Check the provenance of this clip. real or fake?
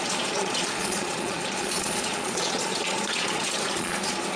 fake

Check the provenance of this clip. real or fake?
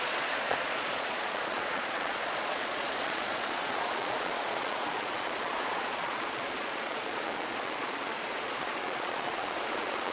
fake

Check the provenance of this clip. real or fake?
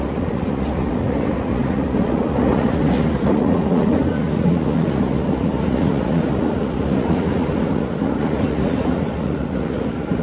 fake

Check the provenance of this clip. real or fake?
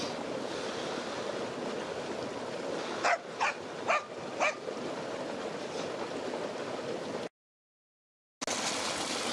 real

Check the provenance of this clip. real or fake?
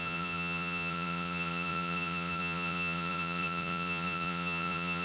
fake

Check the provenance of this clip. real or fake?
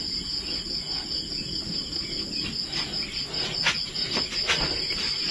real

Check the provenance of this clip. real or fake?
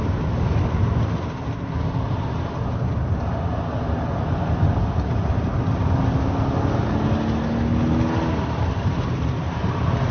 real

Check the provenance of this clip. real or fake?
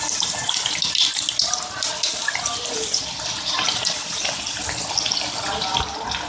real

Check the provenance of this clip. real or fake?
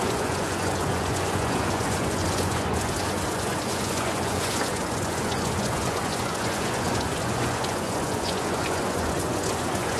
fake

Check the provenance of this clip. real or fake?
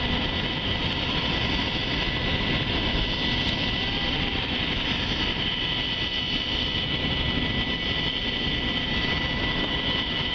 real